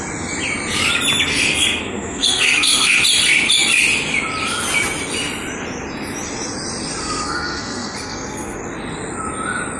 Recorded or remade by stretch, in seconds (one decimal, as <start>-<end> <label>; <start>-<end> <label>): 0.0-1.3 recorded; 1.3-3.0 remade; 3.0-7.0 recorded; 7.0-8.6 remade; 8.6-9.8 recorded